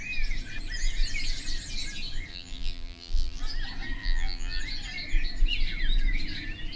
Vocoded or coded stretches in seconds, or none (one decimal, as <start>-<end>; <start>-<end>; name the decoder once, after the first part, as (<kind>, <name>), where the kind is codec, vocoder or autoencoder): 2.3-3.4 (vocoder, BigVGAN v2); 4.0-4.6